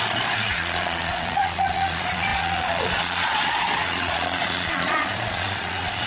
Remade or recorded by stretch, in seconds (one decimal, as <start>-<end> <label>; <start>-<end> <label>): 0.0-6.1 remade